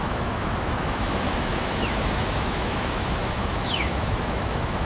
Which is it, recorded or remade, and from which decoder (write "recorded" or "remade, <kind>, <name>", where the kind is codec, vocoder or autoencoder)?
remade, autoencoder, DAC-VAE